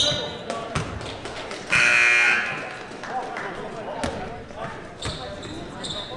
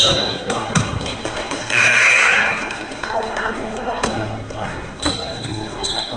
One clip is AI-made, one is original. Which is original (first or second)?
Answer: first